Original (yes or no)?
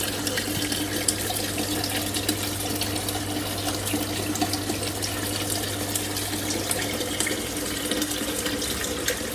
yes